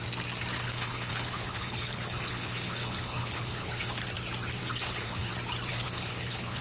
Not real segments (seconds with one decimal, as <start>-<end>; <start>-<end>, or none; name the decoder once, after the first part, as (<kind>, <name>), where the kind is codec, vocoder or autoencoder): 0.6-4.0 (codec, HILCodec); 4.6-5.3; 5.7-6.6